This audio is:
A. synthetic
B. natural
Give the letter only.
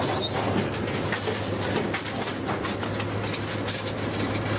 B